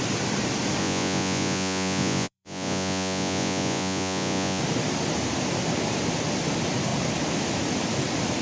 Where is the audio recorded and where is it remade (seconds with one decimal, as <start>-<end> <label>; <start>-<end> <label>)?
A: 0.0-0.8 recorded; 0.8-4.6 remade; 4.6-8.4 recorded